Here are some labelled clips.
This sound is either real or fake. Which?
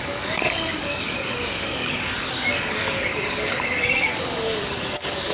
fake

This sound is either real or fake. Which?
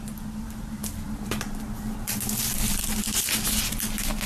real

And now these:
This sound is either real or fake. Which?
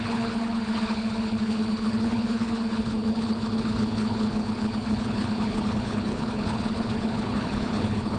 fake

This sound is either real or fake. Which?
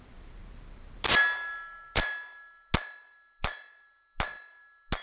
real